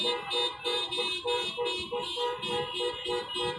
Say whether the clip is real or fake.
real